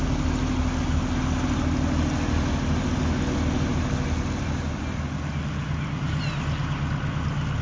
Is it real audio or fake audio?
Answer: real